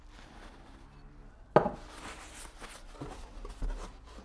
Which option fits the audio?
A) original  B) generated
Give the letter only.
A